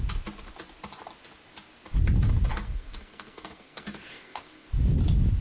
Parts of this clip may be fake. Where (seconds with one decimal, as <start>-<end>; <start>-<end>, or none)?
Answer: 2.5-4.7